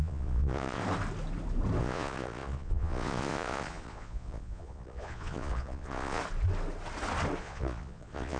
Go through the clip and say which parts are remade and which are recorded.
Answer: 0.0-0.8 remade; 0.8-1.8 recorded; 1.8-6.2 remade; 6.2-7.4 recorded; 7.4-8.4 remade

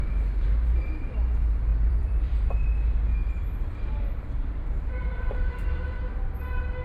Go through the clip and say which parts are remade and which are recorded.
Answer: 0.0-1.7 recorded; 1.7-2.5 remade; 2.5-3.2 recorded; 3.2-6.0 remade; 6.0-6.8 recorded

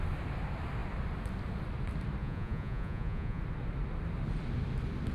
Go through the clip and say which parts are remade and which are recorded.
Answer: 0.0-2.2 recorded; 2.2-3.4 remade; 3.4-5.1 recorded